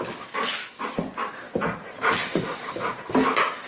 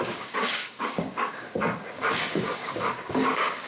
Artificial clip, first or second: second